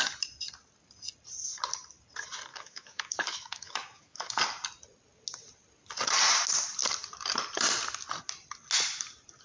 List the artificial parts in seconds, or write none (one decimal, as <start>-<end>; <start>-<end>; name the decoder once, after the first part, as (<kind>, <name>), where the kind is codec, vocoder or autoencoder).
2.5-4.4 (autoencoder, DAC-VAE)